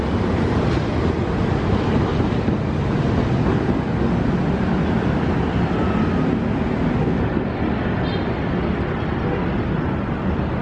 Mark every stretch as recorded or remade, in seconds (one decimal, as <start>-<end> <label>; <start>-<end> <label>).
0.0-2.1 recorded; 2.1-3.1 remade; 3.1-10.6 recorded